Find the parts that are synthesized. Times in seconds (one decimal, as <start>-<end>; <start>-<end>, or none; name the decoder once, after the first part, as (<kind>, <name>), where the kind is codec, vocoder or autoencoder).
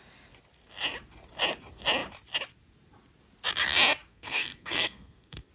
4.1-5.5 (codec, SNAC)